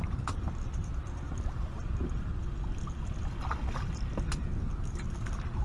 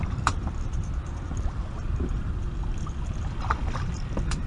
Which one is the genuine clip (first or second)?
first